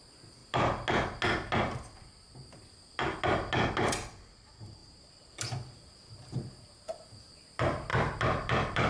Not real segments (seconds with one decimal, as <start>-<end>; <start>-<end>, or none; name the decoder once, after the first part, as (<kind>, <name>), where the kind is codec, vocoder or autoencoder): 7.9-8.9 (vocoder, BigVGAN v2)